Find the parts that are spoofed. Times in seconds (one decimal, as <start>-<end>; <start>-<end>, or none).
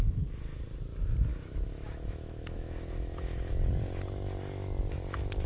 1.3-3.5